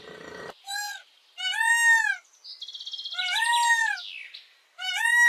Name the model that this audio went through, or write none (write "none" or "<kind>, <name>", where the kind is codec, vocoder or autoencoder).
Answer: none